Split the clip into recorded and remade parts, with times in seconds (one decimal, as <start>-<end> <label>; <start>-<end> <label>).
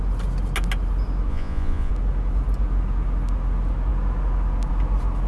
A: 0.0-1.3 recorded; 1.3-1.9 remade; 1.9-5.3 recorded